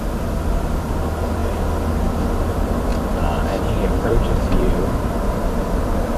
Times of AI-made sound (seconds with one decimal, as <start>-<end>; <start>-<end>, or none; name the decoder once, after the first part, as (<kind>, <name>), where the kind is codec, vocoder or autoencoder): 0.0-1.4 (vocoder, BigVGAN v2); 1.9-2.9; 4.0-6.2